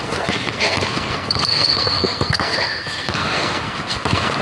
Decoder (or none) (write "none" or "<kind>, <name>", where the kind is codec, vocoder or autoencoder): codec, SNAC